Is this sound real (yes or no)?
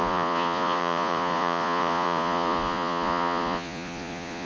no